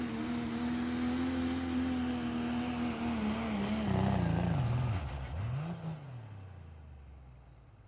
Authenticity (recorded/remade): recorded